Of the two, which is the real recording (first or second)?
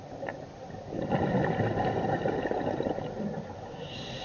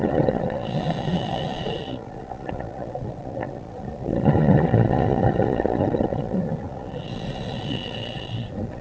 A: first